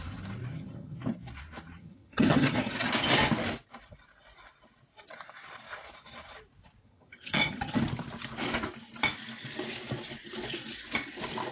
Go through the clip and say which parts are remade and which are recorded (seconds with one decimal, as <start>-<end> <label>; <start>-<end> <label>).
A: 0.0-0.5 recorded; 0.5-1.0 remade; 1.0-1.8 recorded; 1.8-2.9 remade; 2.9-6.8 recorded; 6.8-7.8 remade; 7.8-11.5 recorded